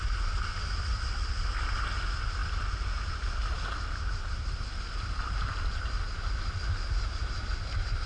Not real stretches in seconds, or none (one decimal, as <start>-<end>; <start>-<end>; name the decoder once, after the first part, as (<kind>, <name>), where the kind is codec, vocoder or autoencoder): none